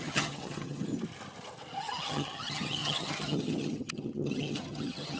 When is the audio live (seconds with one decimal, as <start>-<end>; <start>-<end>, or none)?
0.9-1.8